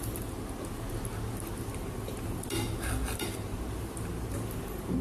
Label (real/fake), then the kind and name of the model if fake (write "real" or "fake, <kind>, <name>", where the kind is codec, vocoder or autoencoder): real